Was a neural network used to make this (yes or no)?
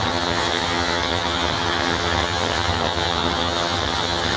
yes